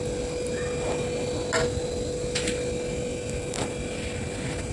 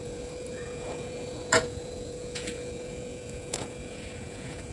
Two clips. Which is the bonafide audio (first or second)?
first